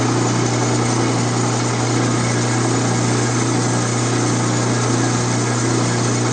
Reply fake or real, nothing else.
real